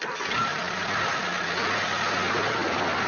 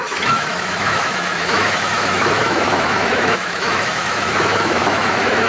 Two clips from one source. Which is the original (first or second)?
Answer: first